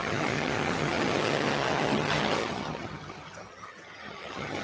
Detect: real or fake fake